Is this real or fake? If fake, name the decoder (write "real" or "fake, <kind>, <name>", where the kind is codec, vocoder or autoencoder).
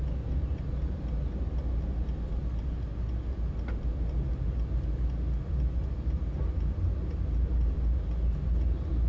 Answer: real